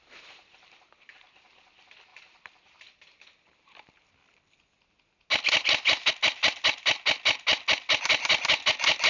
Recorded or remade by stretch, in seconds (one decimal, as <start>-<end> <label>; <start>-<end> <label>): 0.0-9.1 recorded